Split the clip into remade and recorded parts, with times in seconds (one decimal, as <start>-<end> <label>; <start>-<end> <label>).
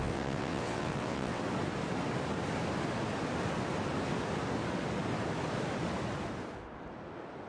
0.0-1.4 remade; 1.4-7.5 recorded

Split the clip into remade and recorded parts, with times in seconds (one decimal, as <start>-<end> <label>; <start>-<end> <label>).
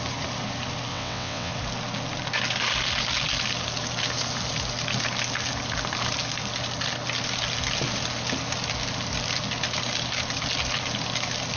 0.0-0.9 recorded; 0.9-1.5 remade; 1.5-11.6 recorded